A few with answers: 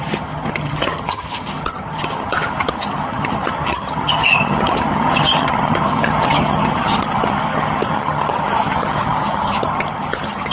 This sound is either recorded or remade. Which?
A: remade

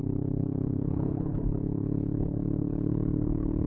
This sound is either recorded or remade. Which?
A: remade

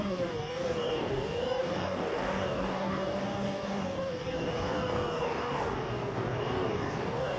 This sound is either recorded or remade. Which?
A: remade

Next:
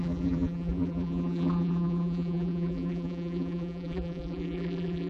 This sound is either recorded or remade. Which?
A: remade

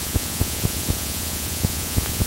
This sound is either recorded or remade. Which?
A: remade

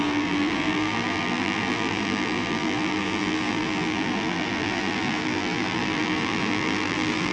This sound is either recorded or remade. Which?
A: remade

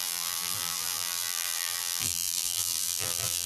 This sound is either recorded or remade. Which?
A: remade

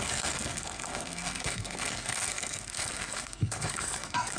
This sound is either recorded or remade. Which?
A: remade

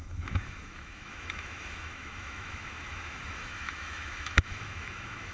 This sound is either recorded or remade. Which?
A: remade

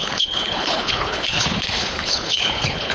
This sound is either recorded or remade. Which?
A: remade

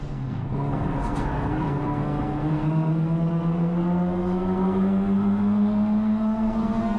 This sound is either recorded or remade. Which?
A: remade